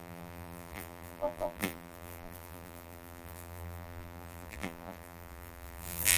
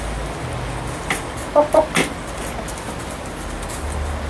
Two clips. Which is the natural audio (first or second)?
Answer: second